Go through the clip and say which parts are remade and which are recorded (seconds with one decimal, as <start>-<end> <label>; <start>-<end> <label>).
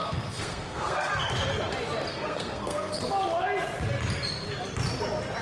0.0-1.1 remade; 1.1-2.1 recorded; 2.1-3.0 remade; 3.0-5.4 recorded